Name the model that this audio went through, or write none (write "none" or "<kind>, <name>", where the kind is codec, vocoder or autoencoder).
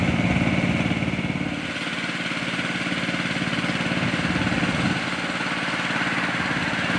none